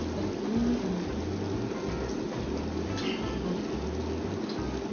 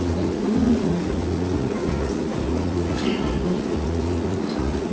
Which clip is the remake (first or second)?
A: second